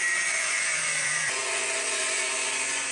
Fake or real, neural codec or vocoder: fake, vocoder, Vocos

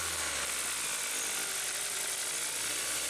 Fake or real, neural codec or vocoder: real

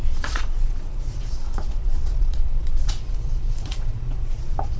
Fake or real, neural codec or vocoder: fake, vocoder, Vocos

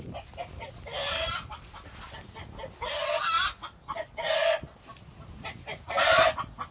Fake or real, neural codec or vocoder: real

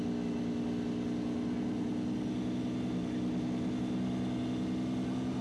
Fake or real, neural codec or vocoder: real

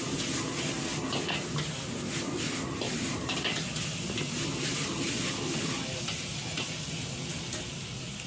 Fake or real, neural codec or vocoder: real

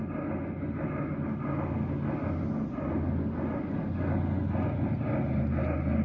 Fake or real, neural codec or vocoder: real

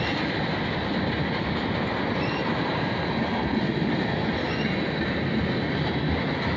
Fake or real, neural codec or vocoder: real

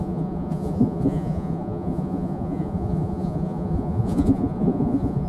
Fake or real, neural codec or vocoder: fake, vocoder, Vocos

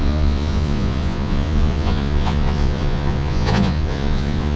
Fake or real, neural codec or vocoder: fake, vocoder, Vocos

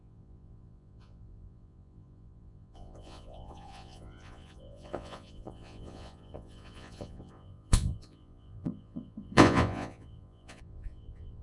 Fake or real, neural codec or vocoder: fake, vocoder, Vocos